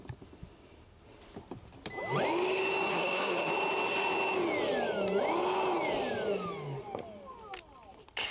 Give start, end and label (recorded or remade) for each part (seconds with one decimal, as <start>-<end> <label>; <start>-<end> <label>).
0.0-2.9 recorded; 2.9-3.5 remade; 3.5-8.3 recorded